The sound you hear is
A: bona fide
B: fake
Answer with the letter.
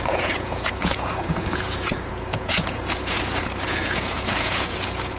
B